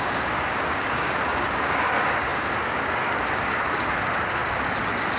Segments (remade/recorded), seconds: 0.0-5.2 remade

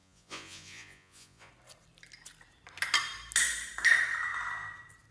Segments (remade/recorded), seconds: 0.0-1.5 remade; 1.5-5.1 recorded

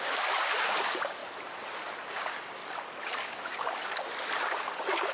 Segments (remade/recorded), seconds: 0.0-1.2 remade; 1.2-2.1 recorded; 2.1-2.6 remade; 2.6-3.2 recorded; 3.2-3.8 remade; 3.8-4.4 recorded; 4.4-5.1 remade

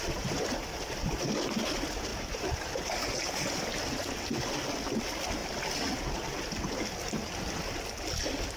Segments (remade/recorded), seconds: 0.0-2.1 recorded; 2.1-2.8 remade; 2.8-8.6 recorded

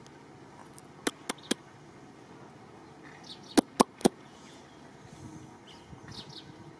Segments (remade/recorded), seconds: 0.0-4.0 recorded; 4.0-4.6 remade; 4.6-6.8 recorded

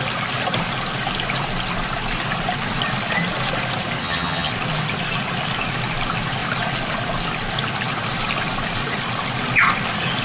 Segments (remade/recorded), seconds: 0.0-4.0 recorded; 4.0-4.5 remade; 4.5-10.2 recorded

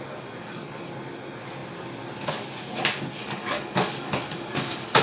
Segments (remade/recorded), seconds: 0.0-0.4 recorded; 0.4-0.9 remade; 0.9-3.1 recorded; 3.1-5.0 remade

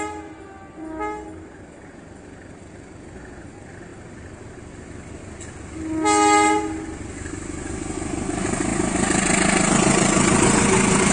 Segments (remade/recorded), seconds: 0.0-11.1 recorded